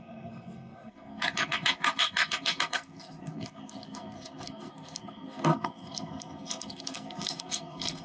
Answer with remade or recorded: remade